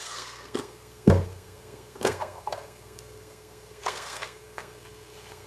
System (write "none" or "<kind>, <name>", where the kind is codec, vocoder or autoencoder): codec, SNAC